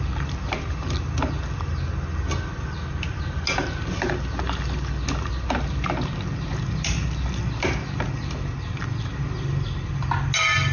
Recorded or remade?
recorded